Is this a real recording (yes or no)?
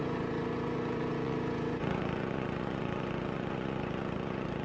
no